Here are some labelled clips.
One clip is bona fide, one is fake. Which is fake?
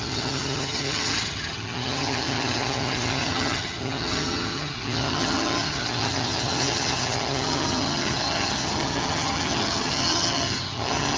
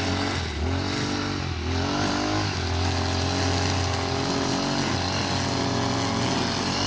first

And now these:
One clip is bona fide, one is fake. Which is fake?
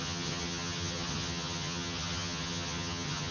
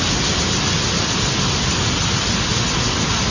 first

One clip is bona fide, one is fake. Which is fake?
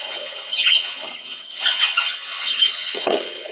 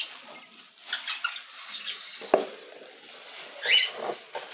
first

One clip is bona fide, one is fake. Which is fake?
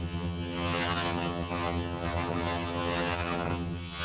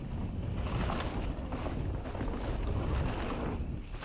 first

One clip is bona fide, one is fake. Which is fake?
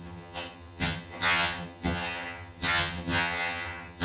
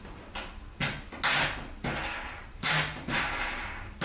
first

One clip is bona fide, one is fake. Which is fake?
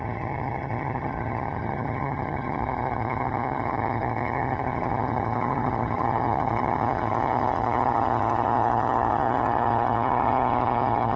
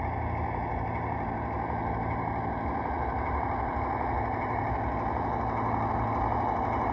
first